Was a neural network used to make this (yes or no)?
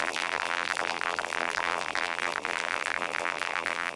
yes